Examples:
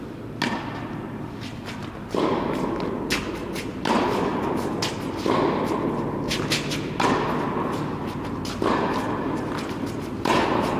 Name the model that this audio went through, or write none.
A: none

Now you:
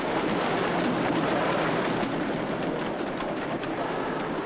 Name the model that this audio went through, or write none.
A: none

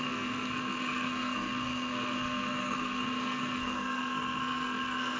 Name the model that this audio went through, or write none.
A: codec, SNAC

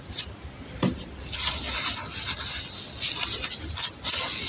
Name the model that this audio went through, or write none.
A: none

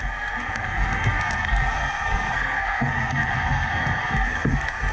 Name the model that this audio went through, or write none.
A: codec, SNAC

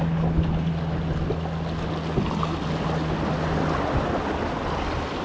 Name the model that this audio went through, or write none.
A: none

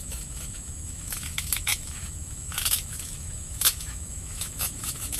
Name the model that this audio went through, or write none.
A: autoencoder, DAC-VAE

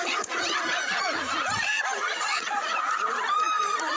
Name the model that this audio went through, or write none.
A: vocoder, Vocos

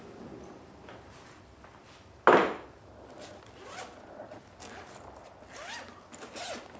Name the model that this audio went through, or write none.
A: none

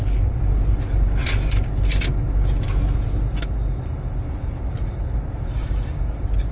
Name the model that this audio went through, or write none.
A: none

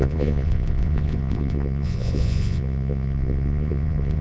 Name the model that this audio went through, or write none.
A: vocoder, Vocos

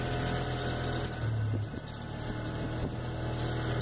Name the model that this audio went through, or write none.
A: none